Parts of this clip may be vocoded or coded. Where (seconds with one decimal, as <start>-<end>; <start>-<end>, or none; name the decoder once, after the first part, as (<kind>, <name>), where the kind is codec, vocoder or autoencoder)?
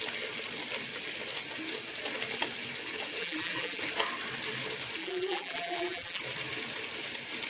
3.2-3.8 (vocoder, BigVGAN v2); 5.0-6.2